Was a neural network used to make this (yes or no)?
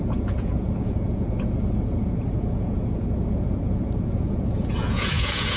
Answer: yes